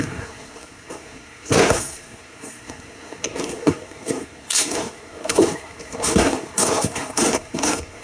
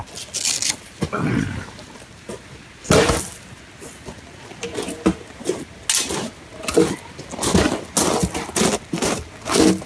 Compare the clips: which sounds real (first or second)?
second